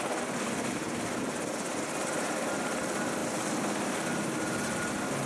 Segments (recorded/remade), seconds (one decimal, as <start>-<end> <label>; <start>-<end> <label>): 0.0-5.3 recorded